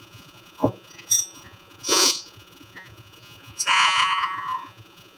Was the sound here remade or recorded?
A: remade